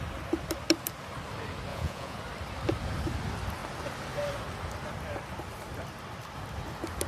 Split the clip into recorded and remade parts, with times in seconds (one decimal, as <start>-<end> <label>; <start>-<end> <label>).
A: 0.0-1.7 recorded; 1.7-2.2 remade; 2.2-7.1 recorded